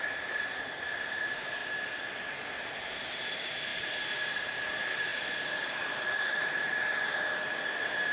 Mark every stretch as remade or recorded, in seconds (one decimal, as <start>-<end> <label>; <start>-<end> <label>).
0.0-1.6 remade; 1.6-2.9 recorded; 2.9-8.1 remade